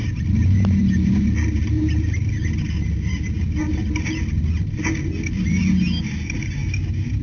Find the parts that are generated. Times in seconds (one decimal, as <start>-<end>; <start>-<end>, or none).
none